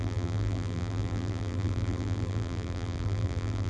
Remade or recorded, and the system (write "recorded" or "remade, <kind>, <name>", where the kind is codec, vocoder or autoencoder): remade, vocoder, BigVGAN v2